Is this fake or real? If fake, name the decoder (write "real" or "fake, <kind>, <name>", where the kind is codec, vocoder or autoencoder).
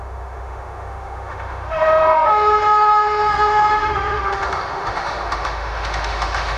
fake, autoencoder, DAC-VAE